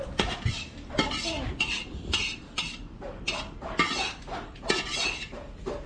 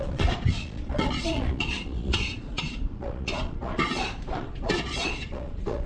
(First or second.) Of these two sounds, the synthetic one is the second